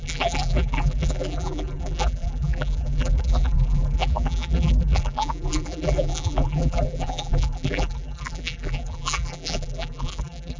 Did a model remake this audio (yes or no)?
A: yes